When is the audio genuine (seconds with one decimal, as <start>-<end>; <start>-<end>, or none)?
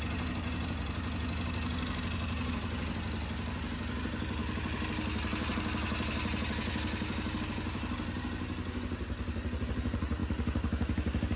0.0-11.4